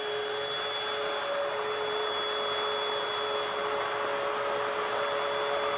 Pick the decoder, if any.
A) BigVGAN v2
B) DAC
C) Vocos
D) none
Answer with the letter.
D